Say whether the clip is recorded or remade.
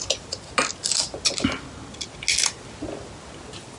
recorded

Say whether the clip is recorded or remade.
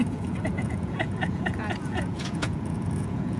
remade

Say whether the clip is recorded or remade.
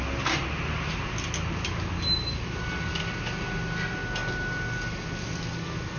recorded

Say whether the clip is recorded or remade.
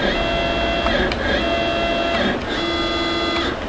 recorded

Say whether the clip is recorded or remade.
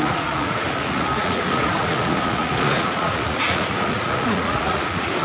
remade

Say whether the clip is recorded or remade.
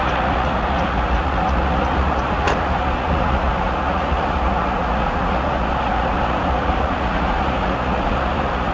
remade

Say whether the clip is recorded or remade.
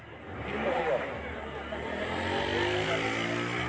recorded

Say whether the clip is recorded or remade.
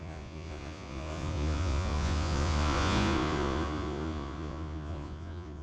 remade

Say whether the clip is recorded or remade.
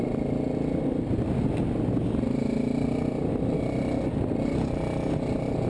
recorded